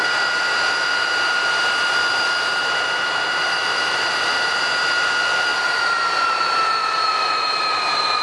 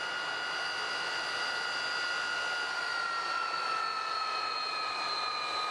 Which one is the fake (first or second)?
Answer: first